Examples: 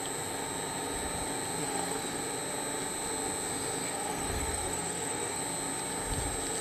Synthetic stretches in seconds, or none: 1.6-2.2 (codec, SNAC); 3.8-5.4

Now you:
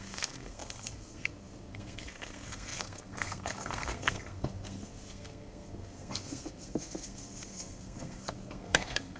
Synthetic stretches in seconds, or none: 0.0-9.2 (codec, SNAC)